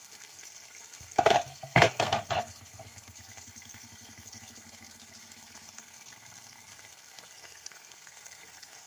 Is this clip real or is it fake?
fake